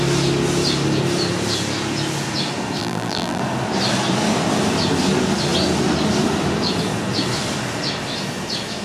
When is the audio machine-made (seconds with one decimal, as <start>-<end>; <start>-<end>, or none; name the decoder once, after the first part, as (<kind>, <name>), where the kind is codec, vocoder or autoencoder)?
2.8-3.4 (vocoder, BigVGAN v2)